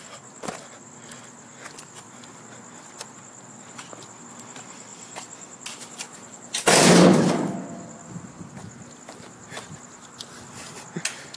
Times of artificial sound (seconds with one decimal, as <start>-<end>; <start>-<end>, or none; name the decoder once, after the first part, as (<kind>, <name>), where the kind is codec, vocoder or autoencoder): 4.9-8.5 (vocoder, BigVGAN v2)